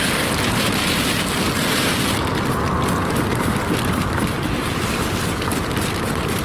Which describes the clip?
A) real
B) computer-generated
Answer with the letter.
A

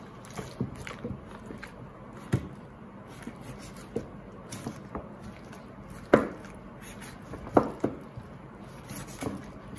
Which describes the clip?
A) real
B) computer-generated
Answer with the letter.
A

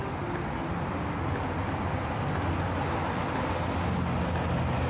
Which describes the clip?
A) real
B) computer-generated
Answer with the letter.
A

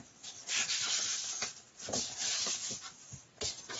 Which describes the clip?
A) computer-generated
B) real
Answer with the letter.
B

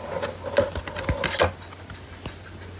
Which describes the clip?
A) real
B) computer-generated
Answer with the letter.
A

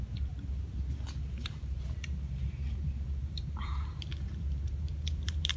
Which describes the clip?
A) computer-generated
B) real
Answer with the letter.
A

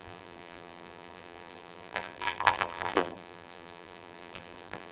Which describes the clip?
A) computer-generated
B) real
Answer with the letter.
A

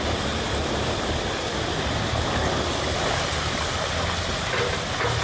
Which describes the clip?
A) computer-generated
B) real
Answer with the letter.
B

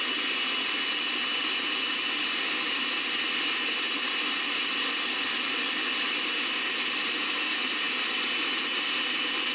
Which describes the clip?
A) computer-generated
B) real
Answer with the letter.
B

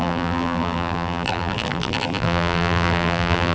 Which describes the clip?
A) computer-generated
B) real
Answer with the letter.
A